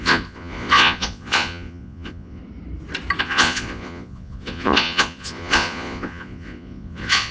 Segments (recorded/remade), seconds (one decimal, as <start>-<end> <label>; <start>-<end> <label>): 0.0-2.4 remade; 2.4-3.2 recorded; 3.2-7.3 remade